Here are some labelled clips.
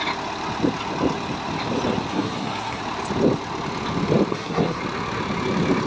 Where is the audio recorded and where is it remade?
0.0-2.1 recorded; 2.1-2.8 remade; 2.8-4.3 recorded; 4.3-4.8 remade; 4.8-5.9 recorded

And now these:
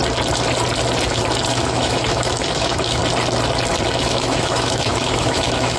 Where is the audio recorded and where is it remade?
0.0-1.5 recorded; 1.5-3.0 remade; 3.0-4.0 recorded; 4.0-5.8 remade

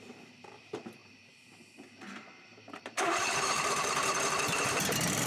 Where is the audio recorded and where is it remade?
0.0-5.3 remade

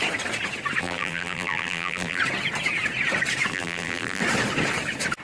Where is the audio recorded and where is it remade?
0.0-0.8 recorded; 0.8-2.2 remade; 2.2-3.5 recorded; 3.5-4.2 remade; 4.2-5.2 recorded